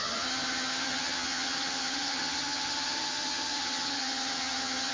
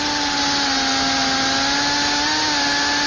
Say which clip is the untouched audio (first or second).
second